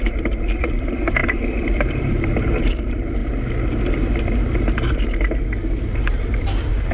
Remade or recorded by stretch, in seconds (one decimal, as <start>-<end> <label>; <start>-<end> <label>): 0.0-3.2 remade; 3.2-3.8 recorded; 3.8-6.9 remade